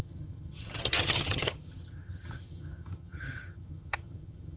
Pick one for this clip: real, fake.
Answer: fake